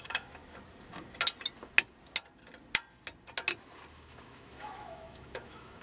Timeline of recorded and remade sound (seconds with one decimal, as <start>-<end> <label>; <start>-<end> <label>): 0.0-0.4 remade; 0.4-3.9 recorded; 3.9-5.8 remade